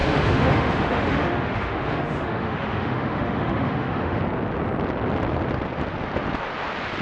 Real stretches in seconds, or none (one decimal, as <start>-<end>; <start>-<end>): 4.2-7.0

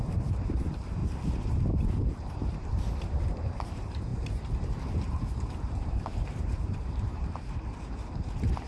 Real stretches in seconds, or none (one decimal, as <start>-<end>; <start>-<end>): 1.0-2.2

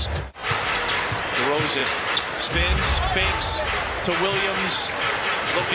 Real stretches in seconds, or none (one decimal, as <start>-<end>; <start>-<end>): 0.0-5.7

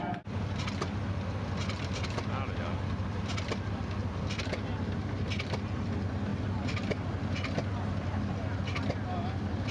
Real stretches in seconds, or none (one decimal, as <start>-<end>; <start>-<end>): 0.0-9.7

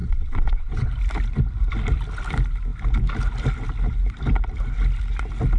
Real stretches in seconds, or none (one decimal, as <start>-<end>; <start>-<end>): 0.9-5.6